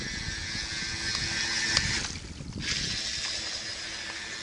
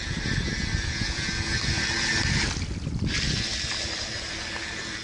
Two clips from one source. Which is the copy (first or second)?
second